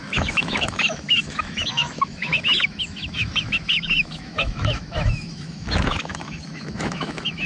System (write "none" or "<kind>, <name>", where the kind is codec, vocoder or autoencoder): autoencoder, DAC-VAE